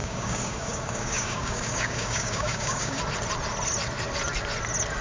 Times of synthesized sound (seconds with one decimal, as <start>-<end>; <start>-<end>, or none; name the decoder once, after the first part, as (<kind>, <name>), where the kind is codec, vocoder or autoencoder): 0.0-3.0 (codec, DAC)